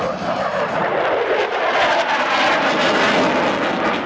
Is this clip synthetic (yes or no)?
no